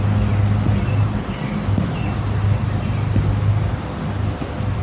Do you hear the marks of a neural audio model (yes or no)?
no